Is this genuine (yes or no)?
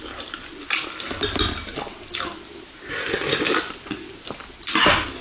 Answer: yes